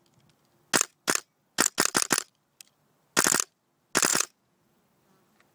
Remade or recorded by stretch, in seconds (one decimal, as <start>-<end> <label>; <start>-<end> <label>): 0.0-4.1 recorded; 4.1-4.8 remade; 4.8-5.5 recorded